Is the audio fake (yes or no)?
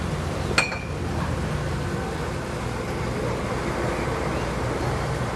no